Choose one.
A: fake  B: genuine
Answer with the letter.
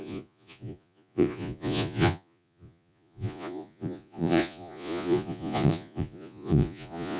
A